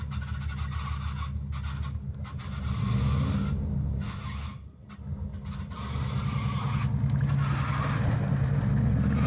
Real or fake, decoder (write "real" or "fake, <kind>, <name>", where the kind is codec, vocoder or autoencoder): real